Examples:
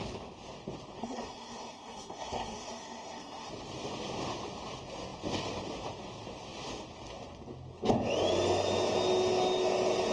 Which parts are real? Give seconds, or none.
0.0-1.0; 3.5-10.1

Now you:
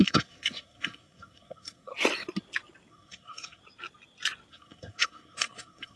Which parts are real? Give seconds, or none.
1.9-2.9; 3.6-4.5

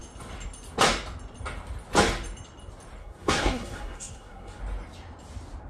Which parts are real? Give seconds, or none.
0.0-3.0; 4.6-5.7

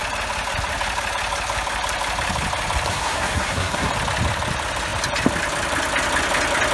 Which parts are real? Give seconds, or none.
0.0-2.9; 3.9-6.7